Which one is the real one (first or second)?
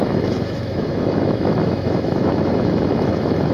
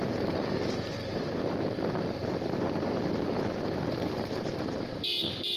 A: second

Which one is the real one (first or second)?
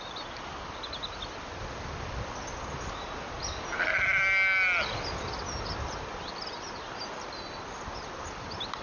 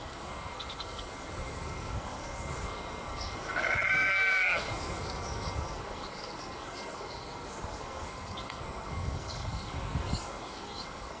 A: first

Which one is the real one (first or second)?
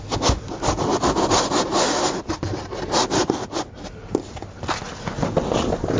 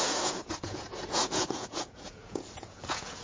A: first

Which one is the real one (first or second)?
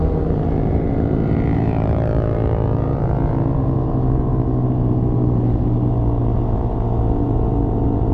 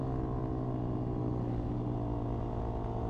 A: second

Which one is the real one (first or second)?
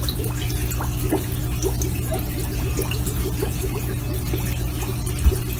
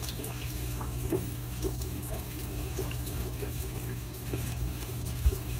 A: first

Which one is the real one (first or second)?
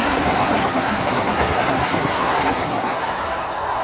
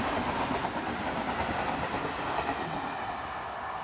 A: second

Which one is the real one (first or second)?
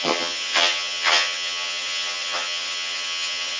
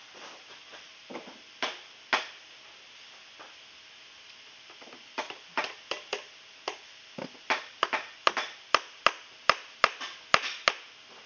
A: second